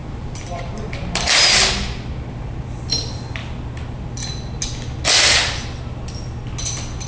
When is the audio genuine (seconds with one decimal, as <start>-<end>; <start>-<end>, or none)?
0.9-7.1